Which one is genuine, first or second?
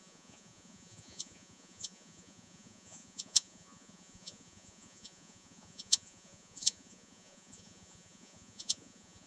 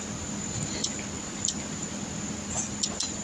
second